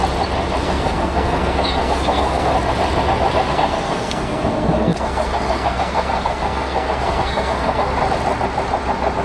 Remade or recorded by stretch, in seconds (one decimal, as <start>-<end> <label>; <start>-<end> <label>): 0.0-0.6 recorded; 0.6-2.5 remade; 2.5-3.5 recorded; 3.5-7.9 remade; 7.9-9.2 recorded